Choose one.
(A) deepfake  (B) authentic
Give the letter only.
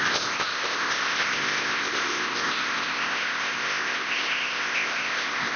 A